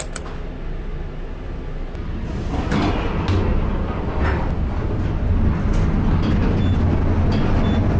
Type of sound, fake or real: real